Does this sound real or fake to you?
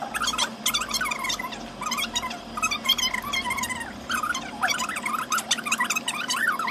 real